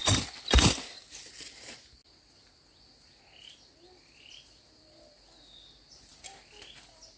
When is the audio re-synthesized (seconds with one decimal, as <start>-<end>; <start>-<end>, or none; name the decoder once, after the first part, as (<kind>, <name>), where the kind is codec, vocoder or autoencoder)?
none